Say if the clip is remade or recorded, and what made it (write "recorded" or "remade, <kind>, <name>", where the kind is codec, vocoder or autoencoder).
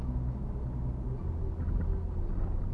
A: recorded